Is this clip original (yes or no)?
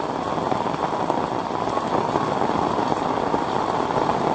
no